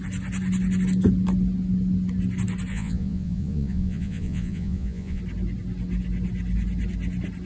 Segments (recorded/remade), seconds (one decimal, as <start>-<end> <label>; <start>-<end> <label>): 0.0-2.7 recorded; 2.7-5.2 remade; 5.2-7.5 recorded